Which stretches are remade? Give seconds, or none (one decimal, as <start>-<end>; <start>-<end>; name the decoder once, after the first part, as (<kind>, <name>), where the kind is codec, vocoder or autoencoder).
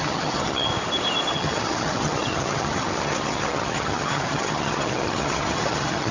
0.0-0.7 (vocoder, HiFi-GAN); 1.3-6.1